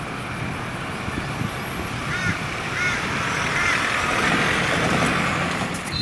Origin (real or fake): real